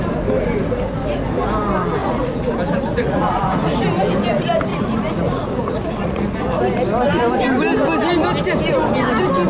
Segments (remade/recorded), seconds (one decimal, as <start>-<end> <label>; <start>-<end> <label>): 0.0-2.0 recorded; 2.0-2.5 remade; 2.5-2.9 recorded; 2.9-3.8 remade; 3.8-4.7 recorded; 4.7-6.6 remade; 6.6-9.5 recorded